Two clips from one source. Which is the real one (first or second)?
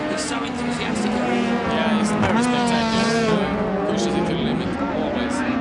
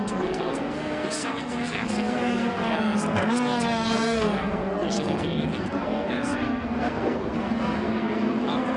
first